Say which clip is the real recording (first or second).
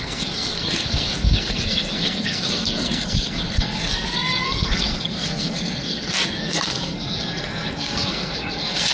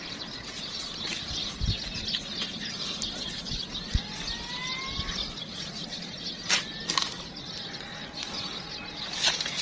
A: second